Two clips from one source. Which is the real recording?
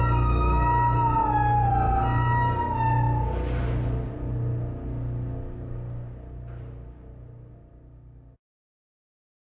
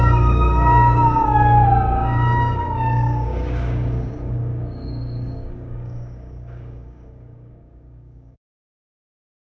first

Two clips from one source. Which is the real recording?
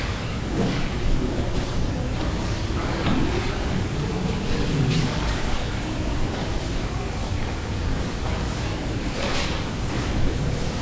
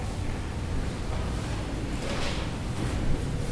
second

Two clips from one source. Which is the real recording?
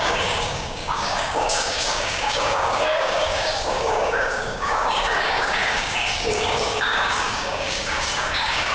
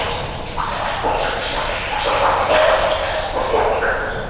second